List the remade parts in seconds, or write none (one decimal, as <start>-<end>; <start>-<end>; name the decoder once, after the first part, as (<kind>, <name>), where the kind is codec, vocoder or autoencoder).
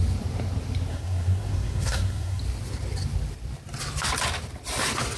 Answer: 0.9-2.4 (codec, SNAC)